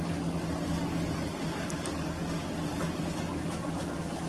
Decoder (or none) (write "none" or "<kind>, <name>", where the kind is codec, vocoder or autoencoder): none